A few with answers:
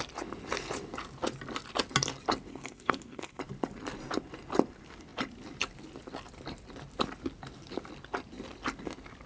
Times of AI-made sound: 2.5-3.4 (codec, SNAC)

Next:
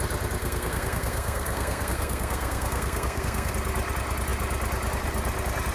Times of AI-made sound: 0.4-3.5 (codec, SNAC)

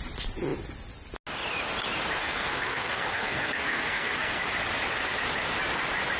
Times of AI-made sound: 2.2-4.4 (codec, SNAC)

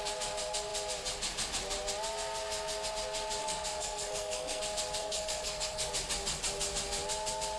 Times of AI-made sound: 3.4-4.6 (codec, SNAC); 5.0-5.9

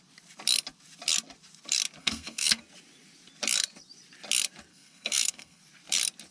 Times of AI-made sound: 2.0-2.6 (codec, SNAC); 4.7-5.6

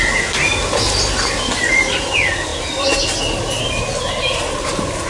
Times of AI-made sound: none

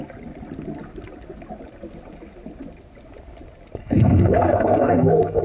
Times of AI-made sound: 3.8-5.4 (codec, SNAC)